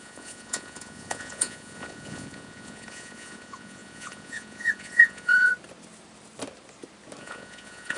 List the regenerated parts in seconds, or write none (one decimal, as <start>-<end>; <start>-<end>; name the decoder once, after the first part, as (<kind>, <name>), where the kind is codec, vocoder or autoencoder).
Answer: 0.0-5.5 (vocoder, Vocos); 7.2-8.0